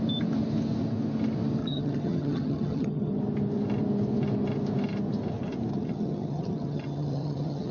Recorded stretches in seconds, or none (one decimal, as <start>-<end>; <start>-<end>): 0.0-1.6; 3.2-5.7